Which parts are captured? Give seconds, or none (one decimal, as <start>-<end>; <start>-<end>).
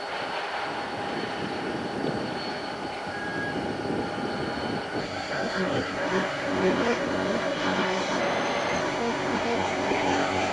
0.0-5.0; 8.2-8.8